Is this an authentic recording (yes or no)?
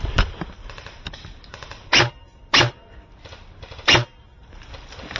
yes